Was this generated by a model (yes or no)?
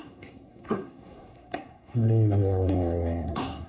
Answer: yes